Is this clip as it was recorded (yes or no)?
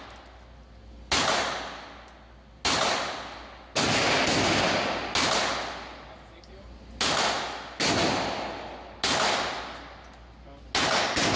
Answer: yes